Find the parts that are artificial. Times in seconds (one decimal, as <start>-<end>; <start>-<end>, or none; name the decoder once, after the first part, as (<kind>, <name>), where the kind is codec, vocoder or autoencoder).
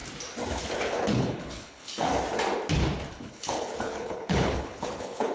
0.6-2.1 (codec, HILCodec); 3.1-5.3